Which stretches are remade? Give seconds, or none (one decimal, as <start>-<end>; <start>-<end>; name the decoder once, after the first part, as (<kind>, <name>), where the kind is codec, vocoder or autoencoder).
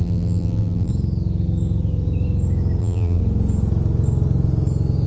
0.0-0.9 (vocoder, BigVGAN v2); 2.8-3.2